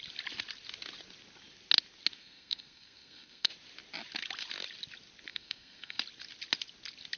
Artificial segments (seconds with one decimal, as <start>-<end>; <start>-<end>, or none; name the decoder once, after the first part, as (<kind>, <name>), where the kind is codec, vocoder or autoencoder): 2.2-3.5 (codec, SNAC); 5.3-6.0